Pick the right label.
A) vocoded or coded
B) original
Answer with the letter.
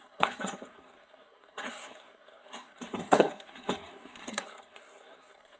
A